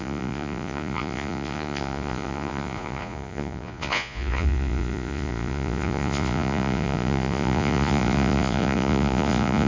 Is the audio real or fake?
fake